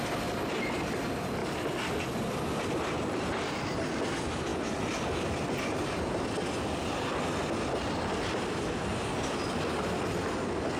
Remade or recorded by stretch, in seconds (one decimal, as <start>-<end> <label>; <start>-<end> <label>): 0.0-1.4 recorded; 1.4-3.2 remade; 3.2-8.9 recorded; 8.9-9.6 remade; 9.6-10.8 recorded